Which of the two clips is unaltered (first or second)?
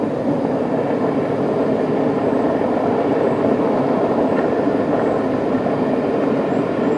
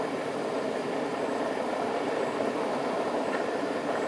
first